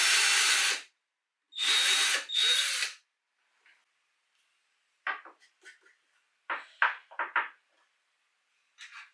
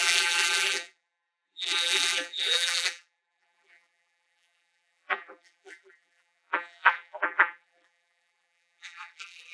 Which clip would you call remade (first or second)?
second